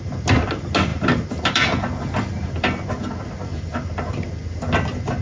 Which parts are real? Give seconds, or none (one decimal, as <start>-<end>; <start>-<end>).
0.0-5.2